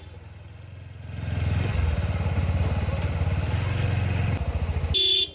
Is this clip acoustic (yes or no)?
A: yes